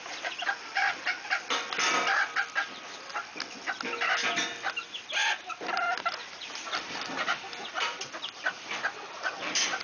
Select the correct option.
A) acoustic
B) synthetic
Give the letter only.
A